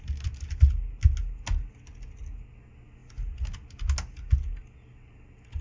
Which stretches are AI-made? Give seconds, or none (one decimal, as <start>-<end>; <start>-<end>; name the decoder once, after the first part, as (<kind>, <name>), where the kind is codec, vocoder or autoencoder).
none